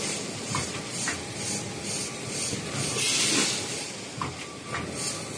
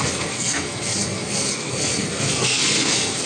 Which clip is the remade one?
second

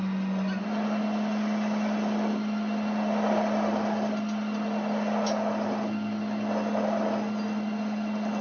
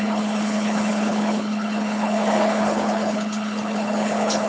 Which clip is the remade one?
second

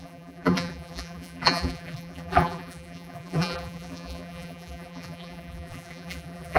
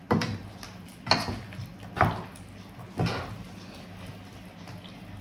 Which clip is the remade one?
first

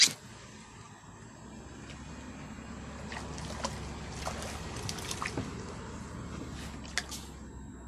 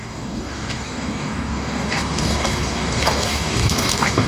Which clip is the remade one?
second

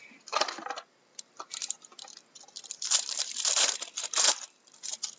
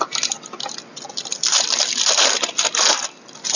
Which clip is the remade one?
first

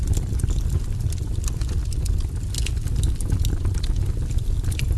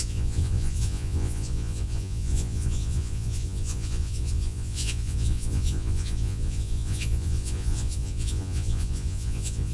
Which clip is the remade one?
second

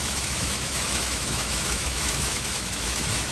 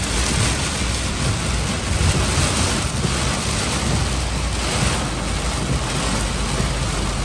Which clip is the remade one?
first